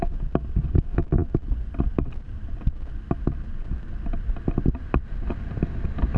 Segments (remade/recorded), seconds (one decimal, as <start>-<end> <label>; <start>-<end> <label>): 0.0-6.2 recorded